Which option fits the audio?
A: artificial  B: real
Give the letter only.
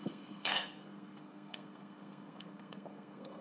A